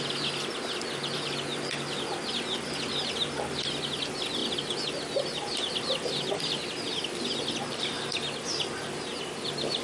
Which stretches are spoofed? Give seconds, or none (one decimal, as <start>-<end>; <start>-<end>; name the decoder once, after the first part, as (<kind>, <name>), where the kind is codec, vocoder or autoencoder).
none